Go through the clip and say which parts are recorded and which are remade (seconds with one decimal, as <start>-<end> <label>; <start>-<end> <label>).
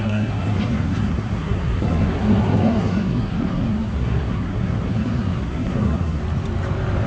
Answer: 0.0-6.2 remade; 6.2-7.1 recorded